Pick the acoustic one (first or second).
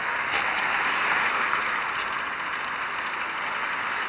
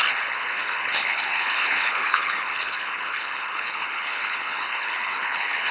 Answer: first